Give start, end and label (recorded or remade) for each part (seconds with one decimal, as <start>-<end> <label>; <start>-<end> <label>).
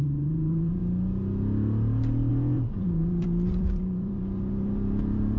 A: 0.0-0.8 remade; 0.8-2.3 recorded; 2.3-5.4 remade